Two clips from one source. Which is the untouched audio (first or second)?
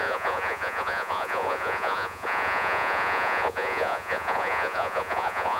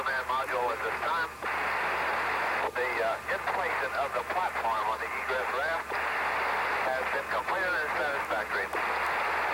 second